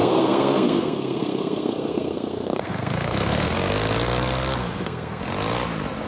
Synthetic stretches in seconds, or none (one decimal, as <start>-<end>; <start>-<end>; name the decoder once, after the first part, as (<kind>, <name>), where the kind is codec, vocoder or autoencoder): 0.0-3.7 (codec, SNAC); 4.6-5.2